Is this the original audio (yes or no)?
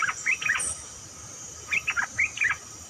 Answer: yes